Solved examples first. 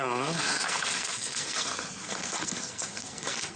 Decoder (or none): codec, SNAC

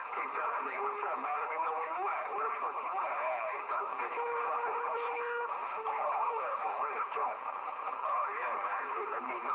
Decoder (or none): codec, HILCodec